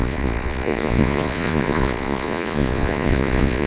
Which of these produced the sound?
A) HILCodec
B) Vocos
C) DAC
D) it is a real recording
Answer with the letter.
B